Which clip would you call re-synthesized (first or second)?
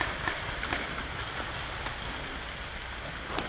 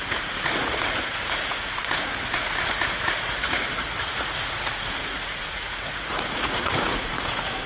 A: second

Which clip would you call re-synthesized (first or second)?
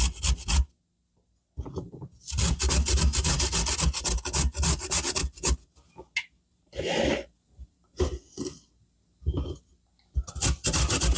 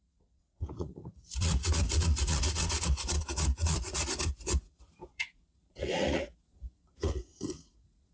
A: second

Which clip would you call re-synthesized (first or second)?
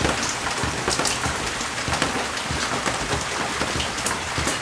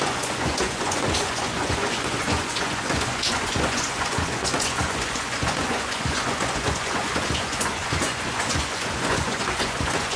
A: second